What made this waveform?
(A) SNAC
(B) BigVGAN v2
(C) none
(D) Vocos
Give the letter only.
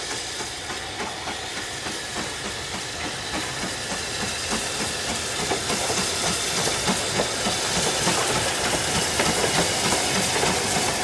C